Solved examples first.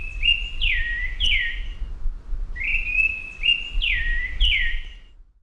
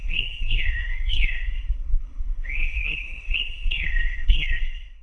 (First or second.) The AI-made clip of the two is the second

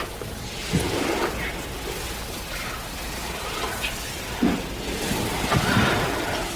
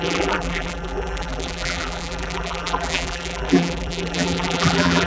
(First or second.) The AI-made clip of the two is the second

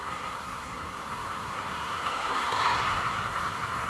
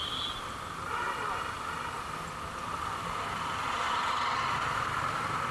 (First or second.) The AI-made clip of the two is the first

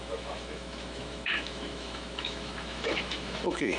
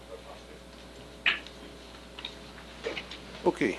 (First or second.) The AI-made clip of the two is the first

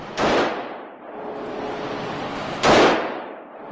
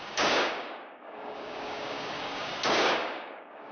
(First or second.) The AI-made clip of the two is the second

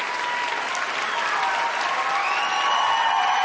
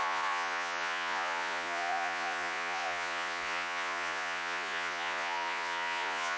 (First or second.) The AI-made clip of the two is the second